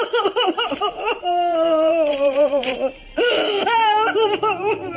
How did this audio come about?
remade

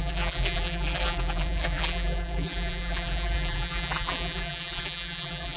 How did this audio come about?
remade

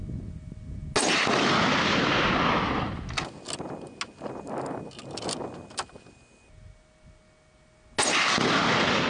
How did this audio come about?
recorded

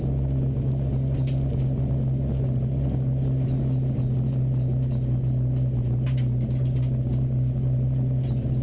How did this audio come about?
recorded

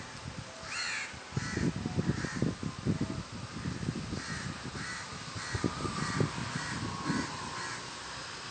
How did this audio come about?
recorded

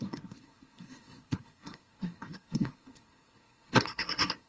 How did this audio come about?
remade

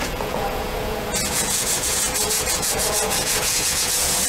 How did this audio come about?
remade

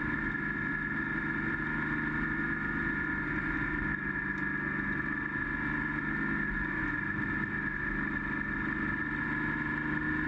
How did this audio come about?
recorded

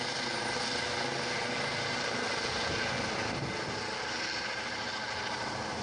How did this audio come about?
recorded